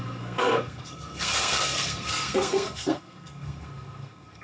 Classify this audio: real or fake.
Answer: fake